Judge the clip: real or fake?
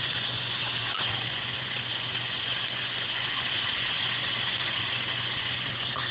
fake